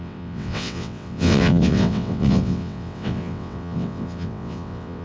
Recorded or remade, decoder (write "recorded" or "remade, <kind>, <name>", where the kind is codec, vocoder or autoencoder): remade, vocoder, WaveNeXt